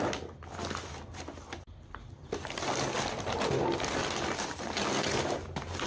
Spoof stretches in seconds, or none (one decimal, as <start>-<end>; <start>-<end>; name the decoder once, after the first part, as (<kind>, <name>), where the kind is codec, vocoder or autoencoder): 4.0-4.9 (vocoder, BigVGAN v2)